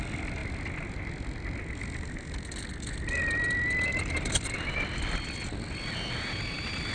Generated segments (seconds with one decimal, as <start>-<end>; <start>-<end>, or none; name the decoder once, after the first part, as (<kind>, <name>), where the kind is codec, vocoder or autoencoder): none